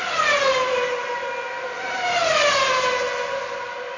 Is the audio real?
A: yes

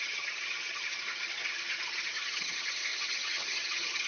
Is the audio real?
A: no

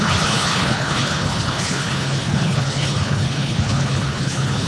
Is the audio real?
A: no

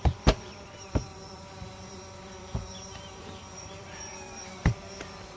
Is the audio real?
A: no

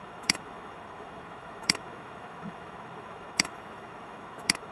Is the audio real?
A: no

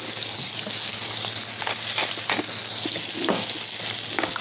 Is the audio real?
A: yes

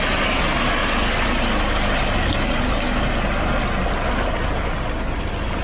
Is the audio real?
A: yes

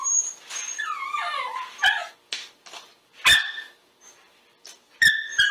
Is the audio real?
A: yes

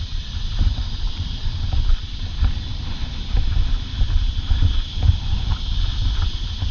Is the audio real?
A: no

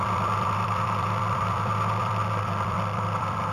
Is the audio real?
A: no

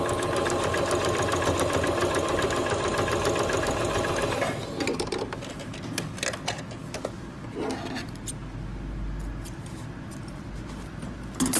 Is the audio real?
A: yes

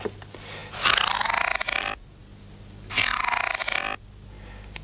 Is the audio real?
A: yes